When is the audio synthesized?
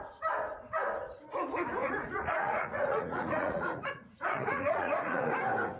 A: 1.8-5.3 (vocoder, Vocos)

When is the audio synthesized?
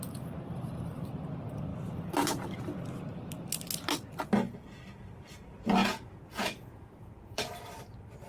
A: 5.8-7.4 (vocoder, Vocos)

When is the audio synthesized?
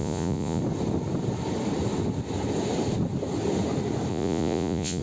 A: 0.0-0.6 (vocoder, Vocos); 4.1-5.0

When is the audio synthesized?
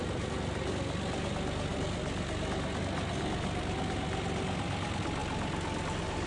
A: none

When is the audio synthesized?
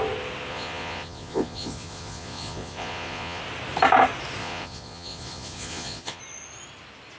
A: 0.5-3.4 (vocoder, Vocos); 4.4-6.2